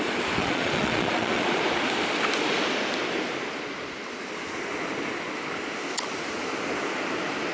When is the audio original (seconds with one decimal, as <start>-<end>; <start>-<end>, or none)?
0.0-0.4; 1.6-7.5